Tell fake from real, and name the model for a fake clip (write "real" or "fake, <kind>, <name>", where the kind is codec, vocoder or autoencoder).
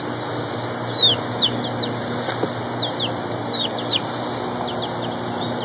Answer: real